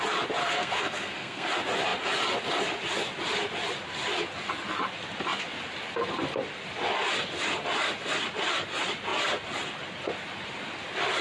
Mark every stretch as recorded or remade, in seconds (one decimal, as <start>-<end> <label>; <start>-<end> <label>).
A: 0.0-0.4 recorded; 0.4-1.5 remade; 1.5-11.2 recorded